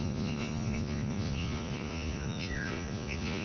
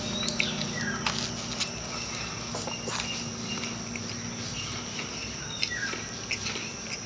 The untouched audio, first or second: second